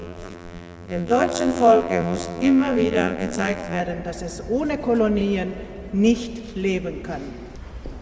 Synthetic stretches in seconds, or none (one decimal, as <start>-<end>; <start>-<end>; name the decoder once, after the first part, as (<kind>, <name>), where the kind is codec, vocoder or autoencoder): 0.0-3.8 (vocoder, BigVGAN v2)